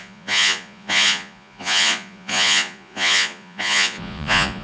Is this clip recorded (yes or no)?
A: no